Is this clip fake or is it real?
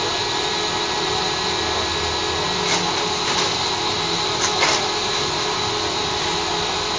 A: real